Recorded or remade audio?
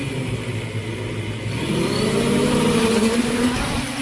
recorded